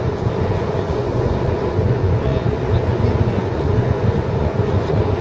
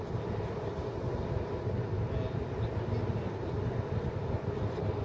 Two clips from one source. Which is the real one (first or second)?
second